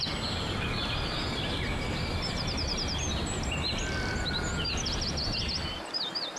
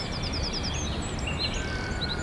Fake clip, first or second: first